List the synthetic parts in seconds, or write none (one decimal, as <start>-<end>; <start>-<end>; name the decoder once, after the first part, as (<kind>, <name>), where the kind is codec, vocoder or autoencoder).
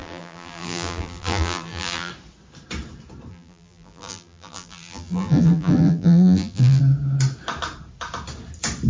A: 0.0-2.1 (vocoder, BigVGAN v2); 3.3-6.8